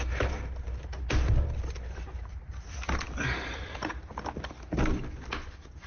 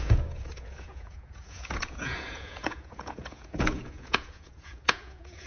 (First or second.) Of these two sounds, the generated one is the second